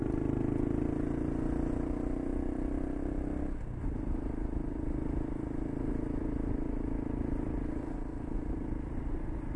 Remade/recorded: recorded